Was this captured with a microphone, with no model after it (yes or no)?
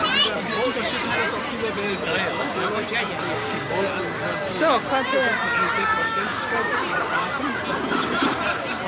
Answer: yes